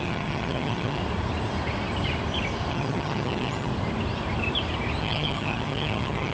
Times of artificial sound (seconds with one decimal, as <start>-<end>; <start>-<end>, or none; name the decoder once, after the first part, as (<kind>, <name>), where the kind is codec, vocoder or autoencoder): 0.0-1.0 (vocoder, HiFi-GAN); 2.7-3.7; 5.0-6.3